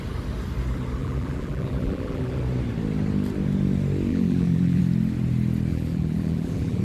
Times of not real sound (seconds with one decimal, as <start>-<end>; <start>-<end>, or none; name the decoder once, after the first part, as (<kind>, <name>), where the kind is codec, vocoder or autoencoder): 1.0-2.4 (vocoder, BigVGAN v2); 4.1-4.8; 5.7-6.8